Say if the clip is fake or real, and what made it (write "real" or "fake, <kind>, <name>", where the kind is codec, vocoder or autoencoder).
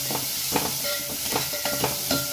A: fake, vocoder, BigVGAN v2